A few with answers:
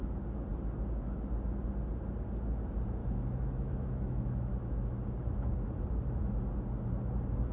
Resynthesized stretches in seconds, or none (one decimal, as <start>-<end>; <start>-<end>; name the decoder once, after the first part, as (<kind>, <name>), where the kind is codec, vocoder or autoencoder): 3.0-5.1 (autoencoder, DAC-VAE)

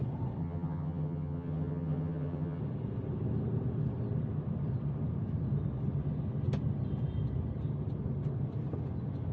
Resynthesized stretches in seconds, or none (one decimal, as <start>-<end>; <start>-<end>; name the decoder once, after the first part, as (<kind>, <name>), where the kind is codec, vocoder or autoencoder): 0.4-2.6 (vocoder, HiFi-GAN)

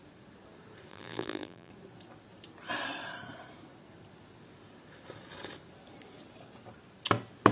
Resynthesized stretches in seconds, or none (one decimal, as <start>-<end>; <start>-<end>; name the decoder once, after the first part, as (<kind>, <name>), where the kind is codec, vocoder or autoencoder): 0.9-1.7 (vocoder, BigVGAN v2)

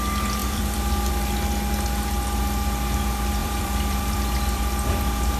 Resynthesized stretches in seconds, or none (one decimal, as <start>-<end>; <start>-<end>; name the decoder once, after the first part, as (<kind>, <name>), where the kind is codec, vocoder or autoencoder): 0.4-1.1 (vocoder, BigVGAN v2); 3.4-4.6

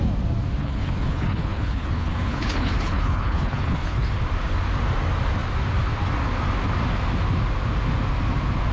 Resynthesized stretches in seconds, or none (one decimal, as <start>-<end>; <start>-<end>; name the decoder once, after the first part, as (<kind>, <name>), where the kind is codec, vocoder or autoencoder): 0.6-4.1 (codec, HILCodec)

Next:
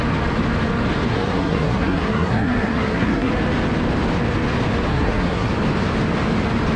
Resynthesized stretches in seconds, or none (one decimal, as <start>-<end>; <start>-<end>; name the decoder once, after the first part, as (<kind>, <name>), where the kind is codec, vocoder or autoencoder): 1.1-3.3 (codec, SNAC); 4.9-5.5

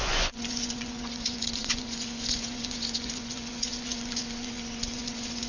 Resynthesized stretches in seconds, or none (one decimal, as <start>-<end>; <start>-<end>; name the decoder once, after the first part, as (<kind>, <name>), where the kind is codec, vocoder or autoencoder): 0.0-5.5 (vocoder, Vocos)